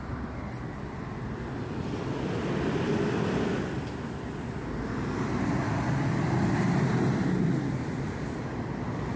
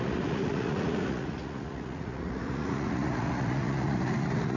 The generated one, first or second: second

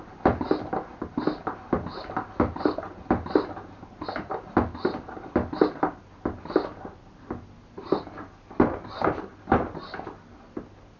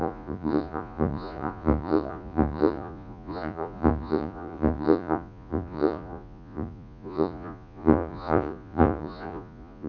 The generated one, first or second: second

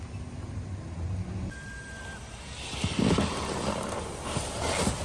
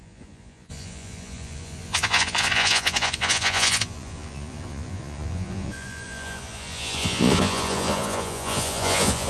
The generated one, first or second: second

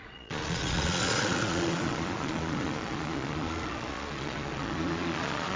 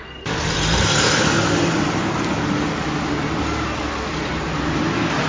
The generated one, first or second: first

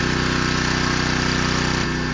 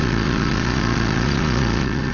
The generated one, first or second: second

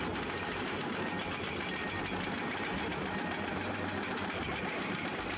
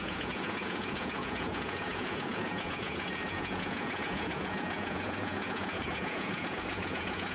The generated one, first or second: second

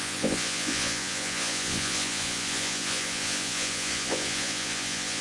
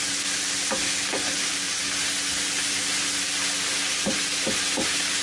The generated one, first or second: first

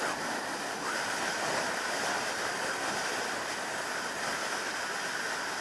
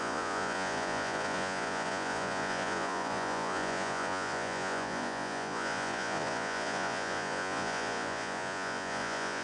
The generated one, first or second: second